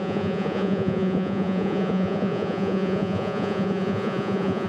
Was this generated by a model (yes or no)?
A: yes